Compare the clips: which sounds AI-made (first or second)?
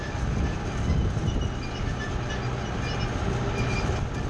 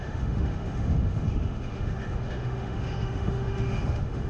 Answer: second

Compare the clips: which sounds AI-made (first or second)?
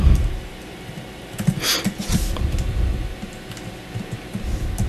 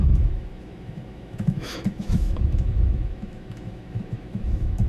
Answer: second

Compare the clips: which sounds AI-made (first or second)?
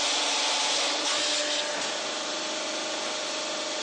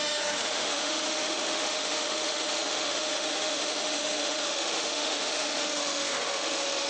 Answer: second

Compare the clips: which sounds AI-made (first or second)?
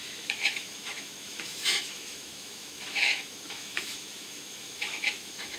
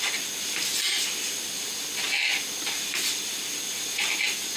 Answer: first